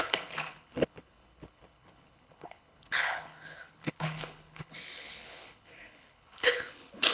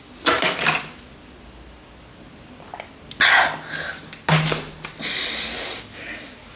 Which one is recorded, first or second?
second